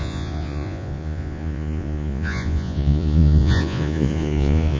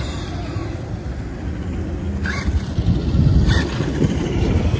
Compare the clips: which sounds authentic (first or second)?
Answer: second